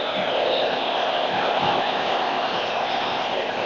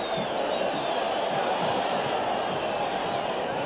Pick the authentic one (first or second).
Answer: second